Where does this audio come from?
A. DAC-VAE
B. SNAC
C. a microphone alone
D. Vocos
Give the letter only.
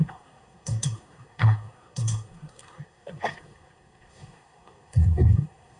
B